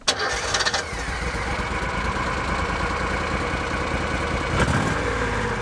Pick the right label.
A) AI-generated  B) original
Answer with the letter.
B